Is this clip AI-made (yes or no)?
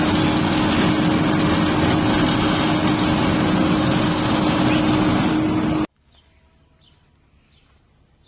no